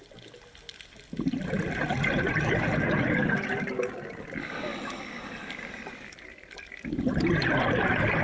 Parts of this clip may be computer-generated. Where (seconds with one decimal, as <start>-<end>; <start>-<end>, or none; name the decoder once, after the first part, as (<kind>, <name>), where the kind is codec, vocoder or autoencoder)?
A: none